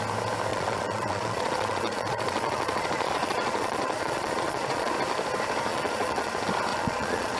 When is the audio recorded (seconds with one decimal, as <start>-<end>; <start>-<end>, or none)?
0.0-0.5; 4.9-5.7; 6.3-6.7